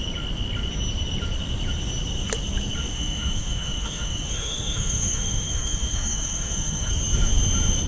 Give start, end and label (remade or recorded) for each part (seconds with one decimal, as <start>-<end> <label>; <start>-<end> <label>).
0.0-2.9 recorded; 2.9-6.9 remade; 6.9-7.9 recorded